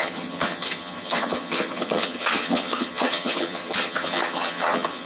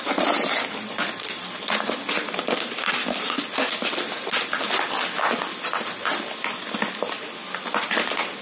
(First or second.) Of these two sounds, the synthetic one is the first